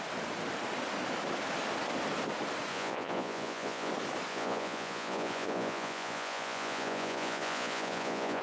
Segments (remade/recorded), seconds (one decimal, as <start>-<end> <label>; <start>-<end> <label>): 0.0-2.7 recorded; 2.7-3.9 remade; 3.9-4.3 recorded; 4.3-8.4 remade